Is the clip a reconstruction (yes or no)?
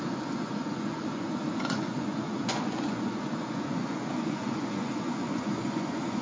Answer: yes